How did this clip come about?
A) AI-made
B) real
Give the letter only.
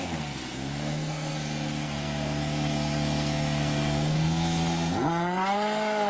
A